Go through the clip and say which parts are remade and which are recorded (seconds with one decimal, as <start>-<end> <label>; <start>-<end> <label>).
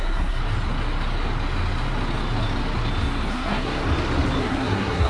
0.0-0.4 remade; 0.4-3.3 recorded; 3.3-3.8 remade; 3.8-4.4 recorded; 4.4-5.1 remade